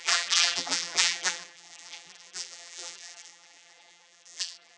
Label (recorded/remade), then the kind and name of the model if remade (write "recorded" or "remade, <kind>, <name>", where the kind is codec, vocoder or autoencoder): remade, vocoder, BigVGAN v2